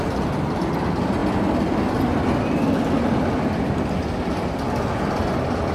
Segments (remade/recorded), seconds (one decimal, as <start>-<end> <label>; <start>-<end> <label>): 0.0-5.7 recorded